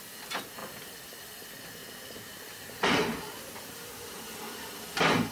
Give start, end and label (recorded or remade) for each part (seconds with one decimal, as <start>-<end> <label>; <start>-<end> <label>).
0.0-1.8 recorded; 1.8-4.2 remade; 4.2-5.3 recorded